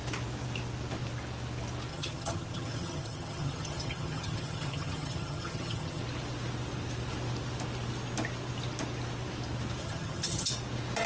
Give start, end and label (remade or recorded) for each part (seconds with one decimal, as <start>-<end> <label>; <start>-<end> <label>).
0.0-1.9 recorded; 1.9-6.0 remade; 6.0-9.8 recorded; 9.8-10.5 remade; 10.5-11.1 recorded